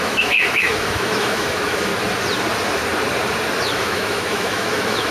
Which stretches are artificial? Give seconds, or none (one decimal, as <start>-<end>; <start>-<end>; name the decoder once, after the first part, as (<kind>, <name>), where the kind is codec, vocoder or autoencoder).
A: 0.0-1.9 (autoencoder, DAC-VAE); 3.6-5.1